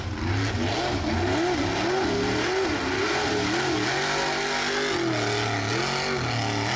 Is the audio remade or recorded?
recorded